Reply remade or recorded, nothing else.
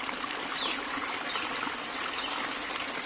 recorded